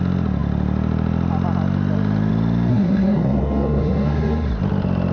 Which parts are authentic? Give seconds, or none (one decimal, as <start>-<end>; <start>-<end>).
0.0-2.7; 4.5-5.1